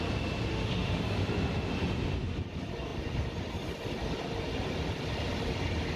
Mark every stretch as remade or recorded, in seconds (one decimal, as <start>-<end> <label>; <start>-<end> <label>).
0.0-0.5 recorded; 0.5-1.0 remade; 1.0-6.0 recorded